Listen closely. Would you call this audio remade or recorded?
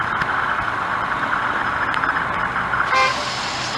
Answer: recorded